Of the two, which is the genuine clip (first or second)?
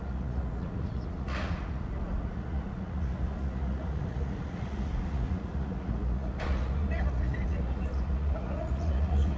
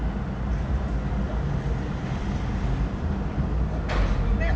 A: second